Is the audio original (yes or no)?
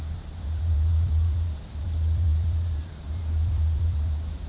no